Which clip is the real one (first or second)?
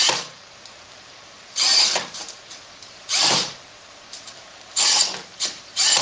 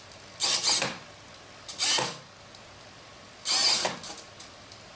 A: second